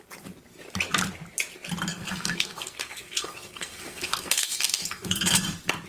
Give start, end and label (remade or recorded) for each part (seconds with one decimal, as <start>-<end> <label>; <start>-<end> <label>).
0.0-1.9 recorded; 1.9-5.4 remade; 5.4-5.9 recorded